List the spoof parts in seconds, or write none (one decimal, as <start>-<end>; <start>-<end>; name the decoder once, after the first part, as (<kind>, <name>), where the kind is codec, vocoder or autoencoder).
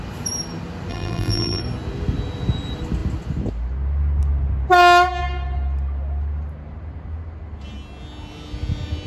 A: 0.9-1.6 (vocoder, BigVGAN v2)